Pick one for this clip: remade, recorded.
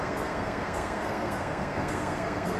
remade